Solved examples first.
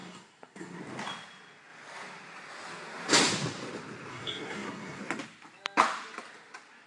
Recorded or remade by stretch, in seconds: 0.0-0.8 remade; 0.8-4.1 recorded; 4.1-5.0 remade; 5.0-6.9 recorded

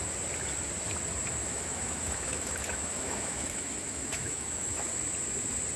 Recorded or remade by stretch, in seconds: 0.0-1.4 recorded; 1.4-4.9 remade; 4.9-5.8 recorded

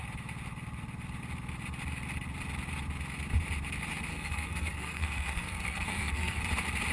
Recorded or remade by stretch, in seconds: 0.0-4.1 recorded; 4.1-6.4 remade; 6.4-6.9 recorded

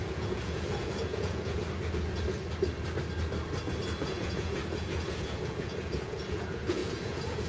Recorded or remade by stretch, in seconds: 0.0-1.6 remade; 1.6-4.0 recorded; 4.0-7.5 remade

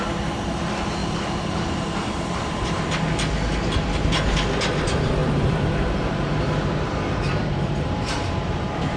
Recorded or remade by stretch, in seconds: 0.0-1.0 recorded; 1.0-2.8 remade; 2.8-5.2 recorded; 5.2-8.6 remade; 8.6-9.0 recorded

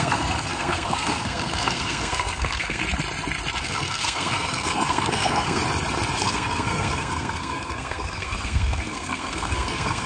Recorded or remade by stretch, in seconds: 0.0-2.8 remade; 2.8-3.6 recorded; 3.6-5.6 remade; 5.6-6.2 recorded; 6.2-10.1 remade